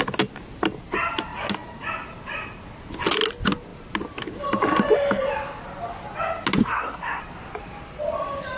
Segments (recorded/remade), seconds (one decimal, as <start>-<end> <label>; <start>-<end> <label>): 0.0-6.6 recorded; 6.6-7.2 remade; 7.2-8.6 recorded

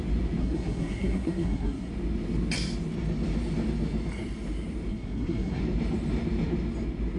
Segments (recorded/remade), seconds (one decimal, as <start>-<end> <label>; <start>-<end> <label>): 0.0-0.4 recorded; 0.4-1.9 remade; 1.9-4.9 recorded; 4.9-5.6 remade; 5.6-7.2 recorded

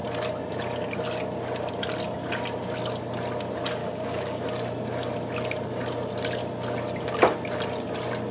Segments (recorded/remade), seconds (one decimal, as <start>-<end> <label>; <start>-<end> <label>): 0.0-3.8 recorded; 3.8-4.4 remade; 4.4-8.3 recorded

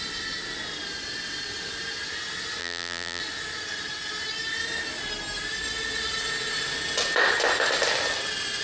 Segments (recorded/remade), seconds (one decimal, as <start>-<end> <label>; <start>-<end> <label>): 0.0-2.6 recorded; 2.6-3.2 remade; 3.2-8.6 recorded

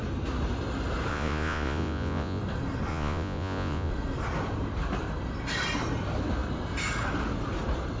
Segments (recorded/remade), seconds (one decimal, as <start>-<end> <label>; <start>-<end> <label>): 0.0-1.1 recorded; 1.1-2.4 remade; 2.4-2.9 recorded; 2.9-3.9 remade; 3.9-8.0 recorded

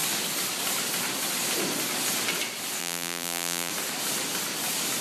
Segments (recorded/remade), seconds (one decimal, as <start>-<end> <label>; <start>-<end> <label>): 0.0-2.8 recorded; 2.8-3.7 remade; 3.7-5.0 recorded

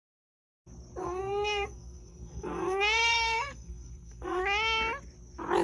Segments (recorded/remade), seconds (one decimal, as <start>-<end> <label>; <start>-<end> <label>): 0.0-1.0 recorded; 1.0-4.4 remade; 4.4-5.6 recorded

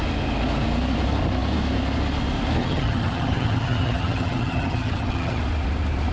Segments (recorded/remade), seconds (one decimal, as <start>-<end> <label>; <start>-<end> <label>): 0.0-2.6 recorded; 2.6-5.4 remade; 5.4-6.1 recorded